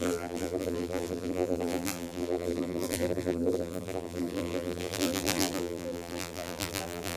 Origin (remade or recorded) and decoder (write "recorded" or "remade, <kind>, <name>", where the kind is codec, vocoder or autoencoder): remade, vocoder, BigVGAN v2